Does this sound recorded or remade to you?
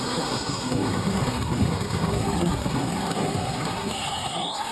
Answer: remade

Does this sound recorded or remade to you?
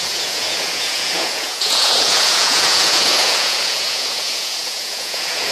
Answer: remade